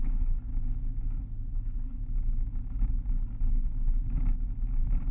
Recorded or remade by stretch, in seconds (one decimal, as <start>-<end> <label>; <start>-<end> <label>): 0.0-0.5 remade; 0.5-1.5 recorded; 1.5-2.0 remade; 2.0-5.1 recorded